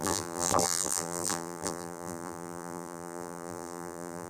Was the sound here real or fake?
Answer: fake